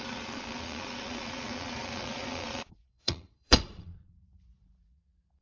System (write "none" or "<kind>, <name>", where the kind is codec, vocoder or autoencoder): vocoder, Vocos